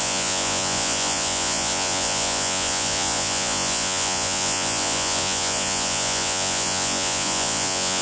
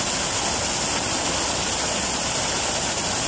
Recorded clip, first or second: second